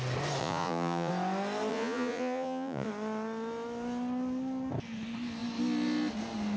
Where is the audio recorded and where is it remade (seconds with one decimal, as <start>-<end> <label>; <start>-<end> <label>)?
0.0-0.4 recorded; 0.4-1.1 remade; 1.1-1.7 recorded; 1.7-2.9 remade; 2.9-6.6 recorded